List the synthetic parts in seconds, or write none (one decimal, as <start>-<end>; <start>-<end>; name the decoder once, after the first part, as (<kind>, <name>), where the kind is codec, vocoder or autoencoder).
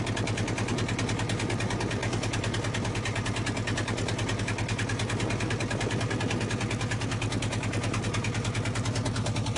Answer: none